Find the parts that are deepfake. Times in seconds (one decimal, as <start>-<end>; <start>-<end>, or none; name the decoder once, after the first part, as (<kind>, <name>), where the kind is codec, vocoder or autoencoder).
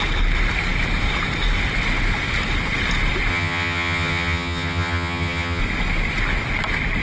3.3-5.6 (vocoder, HiFi-GAN)